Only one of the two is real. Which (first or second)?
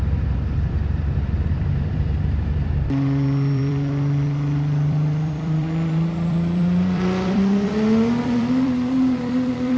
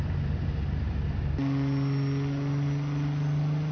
second